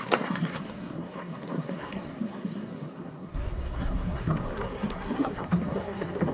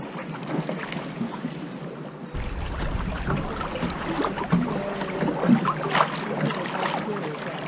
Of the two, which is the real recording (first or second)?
second